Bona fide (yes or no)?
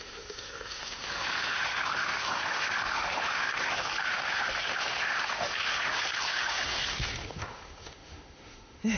no